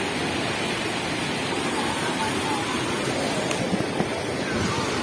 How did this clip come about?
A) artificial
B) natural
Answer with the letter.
B